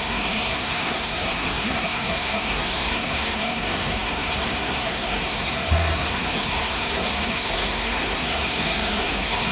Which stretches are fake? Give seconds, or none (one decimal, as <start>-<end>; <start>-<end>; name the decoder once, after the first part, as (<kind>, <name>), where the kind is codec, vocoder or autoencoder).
0.0-9.5 (codec, SNAC)